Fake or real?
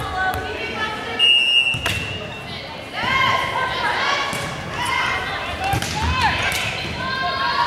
real